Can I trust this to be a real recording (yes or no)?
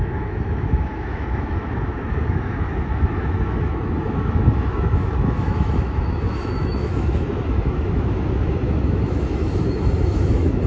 no